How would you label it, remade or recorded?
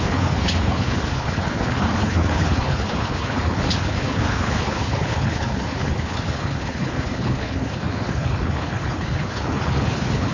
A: remade